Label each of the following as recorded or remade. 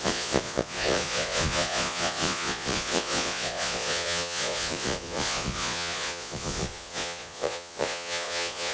remade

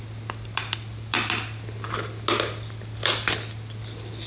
recorded